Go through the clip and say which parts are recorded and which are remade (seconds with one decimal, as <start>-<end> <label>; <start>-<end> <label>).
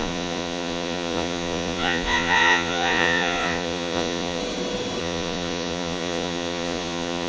0.0-4.4 remade; 4.4-5.0 recorded; 5.0-7.3 remade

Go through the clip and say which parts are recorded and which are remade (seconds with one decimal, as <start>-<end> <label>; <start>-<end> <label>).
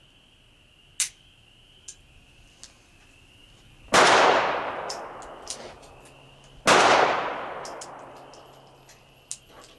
0.0-9.8 recorded